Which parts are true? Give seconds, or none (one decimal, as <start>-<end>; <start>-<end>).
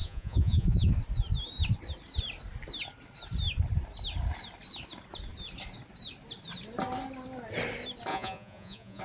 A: 0.9-8.1